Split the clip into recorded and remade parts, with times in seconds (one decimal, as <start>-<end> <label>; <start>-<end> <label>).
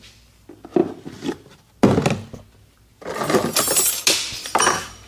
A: 0.0-5.1 recorded